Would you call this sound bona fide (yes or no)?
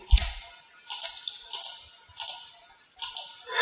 yes